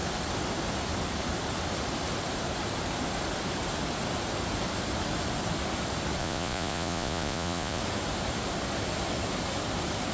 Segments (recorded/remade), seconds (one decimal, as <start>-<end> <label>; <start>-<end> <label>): 0.0-6.2 recorded; 6.2-7.8 remade; 7.8-10.1 recorded